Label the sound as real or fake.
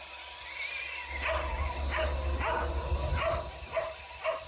real